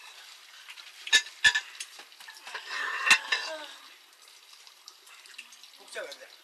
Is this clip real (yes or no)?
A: yes